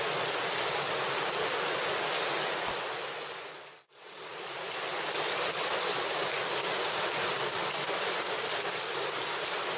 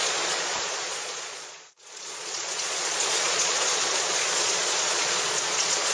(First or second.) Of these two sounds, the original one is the first